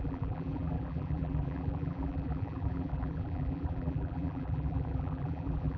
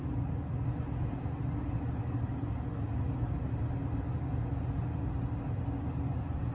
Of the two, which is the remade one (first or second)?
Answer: first